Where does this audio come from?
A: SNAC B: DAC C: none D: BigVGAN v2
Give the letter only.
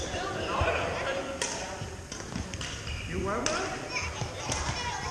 C